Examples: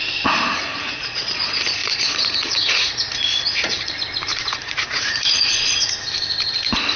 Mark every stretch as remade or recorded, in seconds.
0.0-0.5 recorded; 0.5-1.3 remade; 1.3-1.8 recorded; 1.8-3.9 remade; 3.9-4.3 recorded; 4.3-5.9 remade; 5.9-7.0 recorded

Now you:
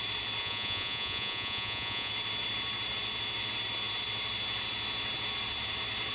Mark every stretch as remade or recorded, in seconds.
0.0-0.4 recorded; 0.4-2.1 remade; 2.1-6.1 recorded

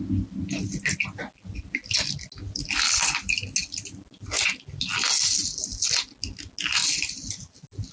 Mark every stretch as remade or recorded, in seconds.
0.0-7.9 recorded

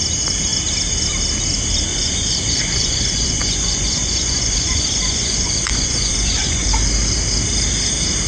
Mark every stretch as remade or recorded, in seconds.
0.0-1.9 recorded; 1.9-6.7 remade; 6.7-8.3 recorded

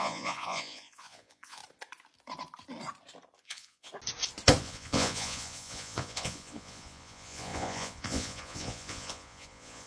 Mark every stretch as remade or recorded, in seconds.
0.0-1.6 remade; 1.6-3.4 recorded; 3.4-3.9 remade; 3.9-4.6 recorded; 4.6-9.9 remade

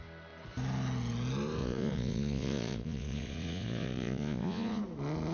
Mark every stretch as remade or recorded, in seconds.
0.0-1.6 recorded; 1.6-4.8 remade; 4.8-5.3 recorded

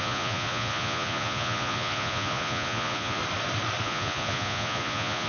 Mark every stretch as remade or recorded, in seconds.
0.0-3.2 remade; 3.2-3.8 recorded; 3.8-5.3 remade

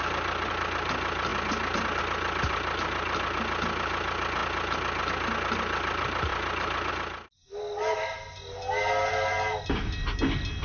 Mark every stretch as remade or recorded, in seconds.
0.0-10.6 recorded